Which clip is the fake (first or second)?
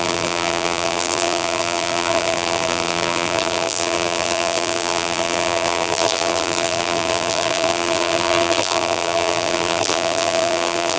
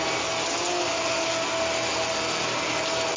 first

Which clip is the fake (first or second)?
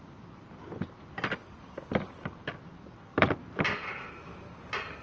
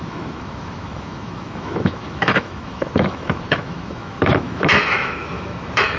second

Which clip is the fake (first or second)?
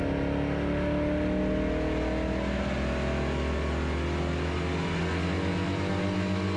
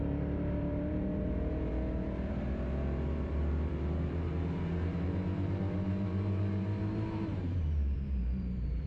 second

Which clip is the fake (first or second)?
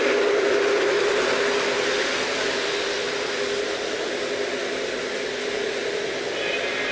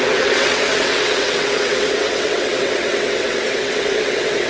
second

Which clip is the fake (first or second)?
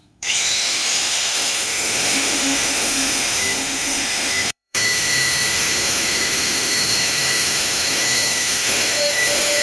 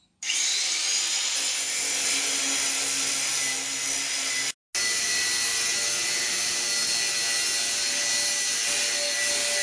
first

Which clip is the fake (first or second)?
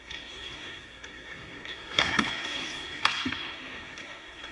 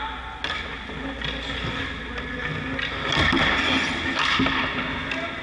first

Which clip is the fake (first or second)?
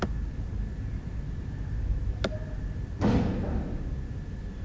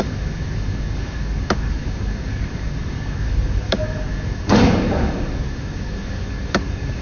second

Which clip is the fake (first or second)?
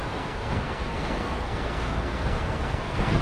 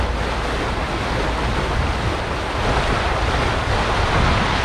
first